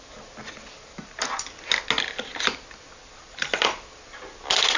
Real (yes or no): yes